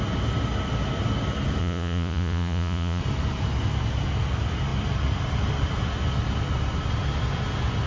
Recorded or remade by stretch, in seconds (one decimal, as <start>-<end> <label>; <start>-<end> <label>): 0.0-1.6 recorded; 1.6-3.0 remade; 3.0-7.9 recorded